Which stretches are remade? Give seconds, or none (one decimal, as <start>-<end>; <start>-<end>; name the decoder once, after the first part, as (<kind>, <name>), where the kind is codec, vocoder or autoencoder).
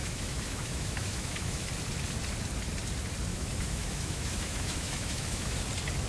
0.0-1.7 (autoencoder, DAC-VAE); 3.3-5.6